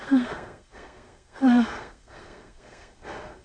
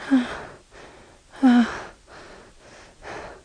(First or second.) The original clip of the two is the second